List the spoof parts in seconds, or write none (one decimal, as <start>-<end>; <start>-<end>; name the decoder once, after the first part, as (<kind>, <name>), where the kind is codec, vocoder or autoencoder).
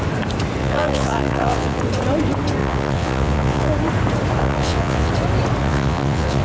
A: 0.6-1.8 (vocoder, WaveNeXt); 2.6-3.7; 4.4-5.1; 5.6-6.4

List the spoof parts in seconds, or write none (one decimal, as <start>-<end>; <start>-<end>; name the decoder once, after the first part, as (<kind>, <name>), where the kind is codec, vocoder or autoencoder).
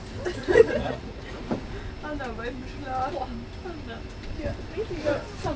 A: 0.4-1.4 (vocoder, Vocos)